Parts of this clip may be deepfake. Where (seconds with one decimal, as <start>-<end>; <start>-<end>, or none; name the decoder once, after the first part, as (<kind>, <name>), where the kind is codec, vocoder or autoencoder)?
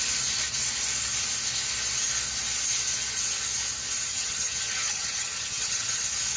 4.1-6.0 (vocoder, HiFi-GAN)